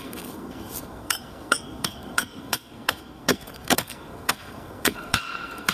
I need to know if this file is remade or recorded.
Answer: remade